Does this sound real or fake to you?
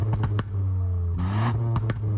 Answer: real